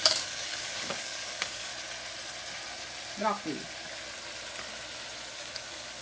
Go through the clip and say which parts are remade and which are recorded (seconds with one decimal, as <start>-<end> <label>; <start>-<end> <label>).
0.0-1.7 remade; 1.7-5.3 recorded; 5.3-6.0 remade